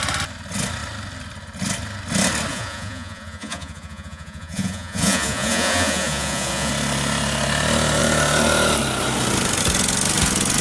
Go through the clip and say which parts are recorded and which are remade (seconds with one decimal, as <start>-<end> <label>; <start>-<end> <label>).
0.0-2.5 recorded; 2.5-6.7 remade; 6.7-10.6 recorded